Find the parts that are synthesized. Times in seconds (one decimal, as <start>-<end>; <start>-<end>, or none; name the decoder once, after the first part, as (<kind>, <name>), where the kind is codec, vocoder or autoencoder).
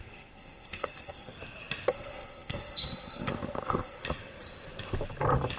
0.0-1.3 (codec, SNAC); 1.9-4.0